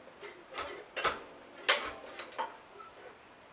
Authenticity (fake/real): real